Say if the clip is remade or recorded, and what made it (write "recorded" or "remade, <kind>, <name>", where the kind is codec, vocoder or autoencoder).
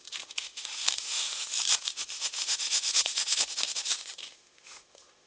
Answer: remade, autoencoder, DAC-VAE